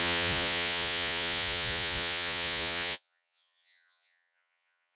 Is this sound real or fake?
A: fake